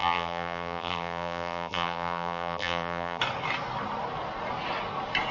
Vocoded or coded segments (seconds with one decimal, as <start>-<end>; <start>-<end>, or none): 0.0-3.2